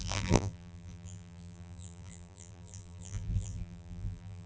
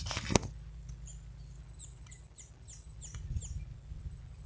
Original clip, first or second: second